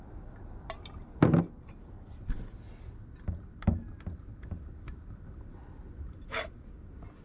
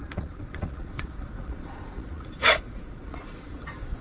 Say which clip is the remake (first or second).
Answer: second